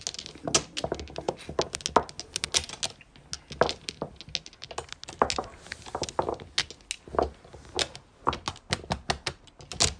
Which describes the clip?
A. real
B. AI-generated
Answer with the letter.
A